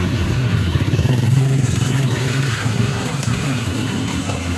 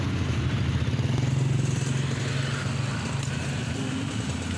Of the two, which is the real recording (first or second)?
second